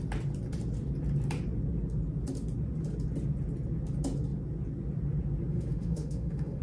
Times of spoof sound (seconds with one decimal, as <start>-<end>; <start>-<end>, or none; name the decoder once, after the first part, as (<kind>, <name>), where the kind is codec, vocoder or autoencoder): 5.5-6.6 (autoencoder, DAC-VAE)